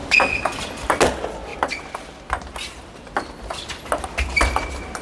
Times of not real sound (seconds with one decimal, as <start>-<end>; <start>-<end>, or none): none